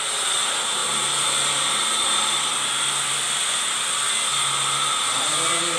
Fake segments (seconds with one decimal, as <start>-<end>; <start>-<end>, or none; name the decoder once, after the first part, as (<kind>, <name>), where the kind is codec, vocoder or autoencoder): none

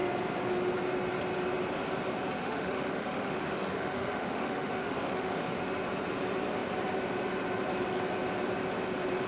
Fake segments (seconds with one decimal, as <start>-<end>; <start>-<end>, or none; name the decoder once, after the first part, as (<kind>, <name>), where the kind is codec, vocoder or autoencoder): 2.4-5.6 (autoencoder, DAC-VAE)

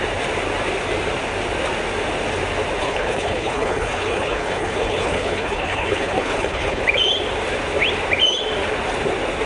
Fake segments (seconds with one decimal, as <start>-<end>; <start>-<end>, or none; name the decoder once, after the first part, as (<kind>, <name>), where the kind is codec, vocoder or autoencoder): 2.8-6.8 (codec, HILCodec)

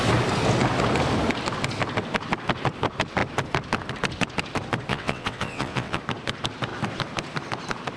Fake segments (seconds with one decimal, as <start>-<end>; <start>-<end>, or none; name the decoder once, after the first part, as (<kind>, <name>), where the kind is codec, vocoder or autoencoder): 4.9-6.0 (vocoder, WaveNeXt)

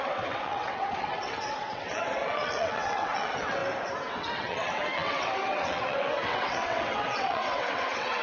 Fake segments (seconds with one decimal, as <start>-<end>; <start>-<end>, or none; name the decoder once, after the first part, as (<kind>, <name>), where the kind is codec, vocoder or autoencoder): 0.0-3.6 (vocoder, WaveNeXt); 4.1-8.2

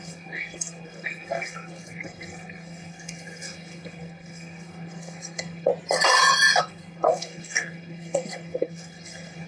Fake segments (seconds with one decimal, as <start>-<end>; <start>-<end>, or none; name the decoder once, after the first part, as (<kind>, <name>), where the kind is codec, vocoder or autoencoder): 0.0-5.7 (codec, SNAC); 6.6-9.5

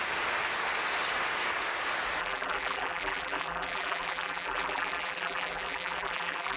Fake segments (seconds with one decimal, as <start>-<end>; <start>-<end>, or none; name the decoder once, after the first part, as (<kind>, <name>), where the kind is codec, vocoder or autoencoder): 2.2-6.6 (vocoder, BigVGAN v2)